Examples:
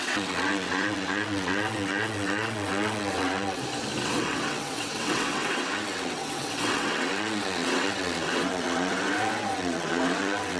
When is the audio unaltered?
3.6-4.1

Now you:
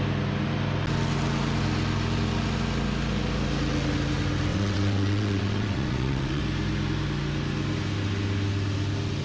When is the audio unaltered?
0.0-4.5; 6.4-9.2

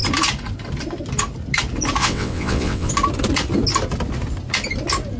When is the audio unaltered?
0.0-2.0; 2.9-5.2